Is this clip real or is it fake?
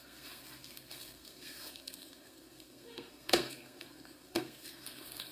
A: fake